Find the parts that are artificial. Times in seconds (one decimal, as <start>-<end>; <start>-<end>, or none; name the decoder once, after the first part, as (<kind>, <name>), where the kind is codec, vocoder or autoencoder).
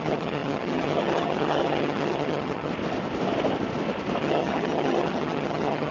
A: 0.0-2.7 (vocoder, HiFi-GAN); 4.2-5.9